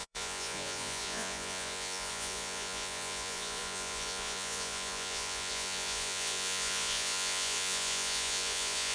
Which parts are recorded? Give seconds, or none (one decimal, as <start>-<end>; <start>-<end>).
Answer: none